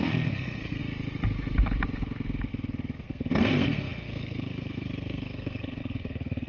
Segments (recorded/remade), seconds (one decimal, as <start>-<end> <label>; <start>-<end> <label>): 0.0-0.8 remade; 0.8-3.0 recorded; 3.0-6.5 remade